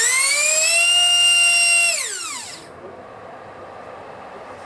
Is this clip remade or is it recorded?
recorded